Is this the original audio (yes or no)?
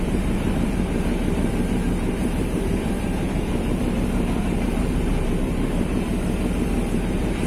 no